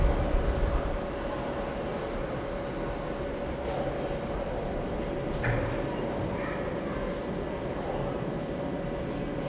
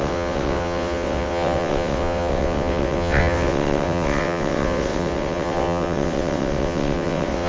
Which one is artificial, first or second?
second